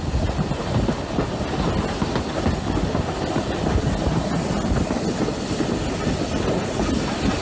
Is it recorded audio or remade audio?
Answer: recorded